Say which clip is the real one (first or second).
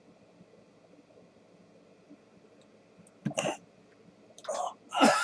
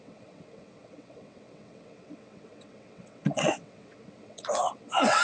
first